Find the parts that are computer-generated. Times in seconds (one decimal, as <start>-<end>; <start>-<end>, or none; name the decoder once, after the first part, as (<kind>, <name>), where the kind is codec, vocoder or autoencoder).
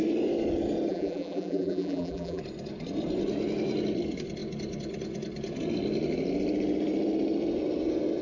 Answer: 0.9-2.4 (vocoder, BigVGAN v2)